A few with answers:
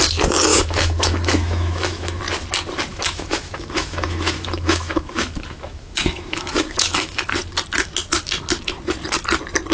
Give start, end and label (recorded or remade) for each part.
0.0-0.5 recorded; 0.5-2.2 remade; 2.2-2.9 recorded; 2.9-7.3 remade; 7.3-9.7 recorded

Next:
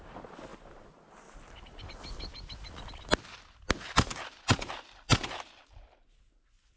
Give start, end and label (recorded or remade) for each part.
0.0-6.8 recorded

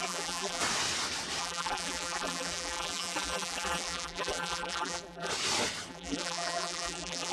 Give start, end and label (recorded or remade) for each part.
0.0-0.6 remade; 0.6-1.4 recorded; 1.4-5.3 remade; 5.3-5.9 recorded; 5.9-7.3 remade

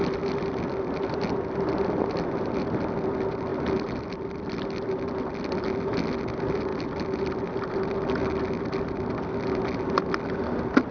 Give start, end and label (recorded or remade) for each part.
0.0-10.9 recorded

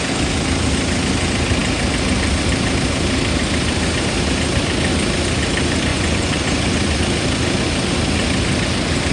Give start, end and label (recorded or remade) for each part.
0.0-5.9 recorded; 5.9-7.0 remade; 7.0-9.1 recorded

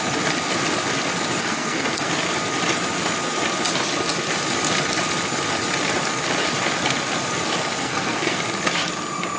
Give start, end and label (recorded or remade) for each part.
0.0-1.4 recorded; 1.4-2.1 remade; 2.1-7.8 recorded; 7.8-8.4 remade; 8.4-9.4 recorded